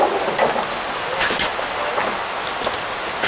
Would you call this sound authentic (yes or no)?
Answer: yes